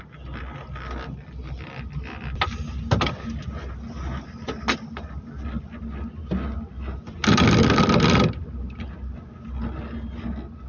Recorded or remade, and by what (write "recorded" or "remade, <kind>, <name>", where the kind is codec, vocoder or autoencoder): recorded